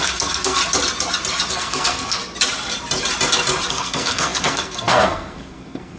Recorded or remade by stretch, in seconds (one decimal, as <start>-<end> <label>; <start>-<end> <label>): 0.0-0.6 remade; 0.6-1.5 recorded; 1.5-2.2 remade; 2.2-3.7 recorded; 3.7-6.0 remade